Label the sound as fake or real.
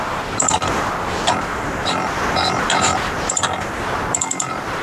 fake